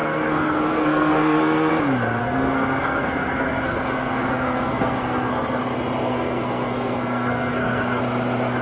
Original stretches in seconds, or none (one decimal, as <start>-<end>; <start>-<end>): 1.7-2.2; 5.6-6.0; 8.0-8.6